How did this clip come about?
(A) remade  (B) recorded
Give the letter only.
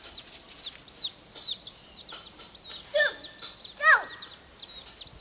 B